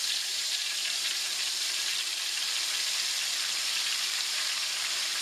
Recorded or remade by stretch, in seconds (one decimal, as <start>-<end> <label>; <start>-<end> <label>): 0.0-2.1 remade; 2.1-3.6 recorded; 3.6-5.2 remade